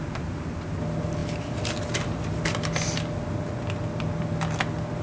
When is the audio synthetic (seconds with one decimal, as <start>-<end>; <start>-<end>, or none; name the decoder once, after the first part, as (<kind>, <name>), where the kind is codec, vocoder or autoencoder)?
none